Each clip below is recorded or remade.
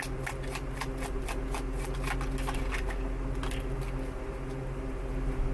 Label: recorded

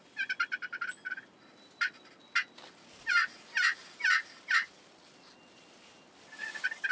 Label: recorded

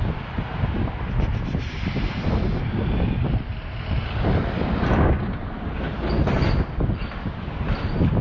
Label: recorded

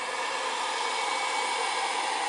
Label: recorded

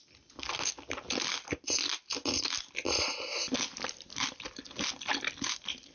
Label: recorded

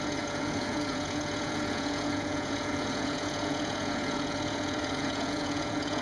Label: remade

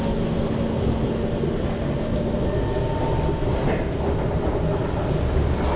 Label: recorded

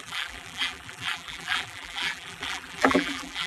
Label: remade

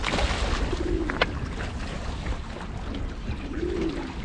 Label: recorded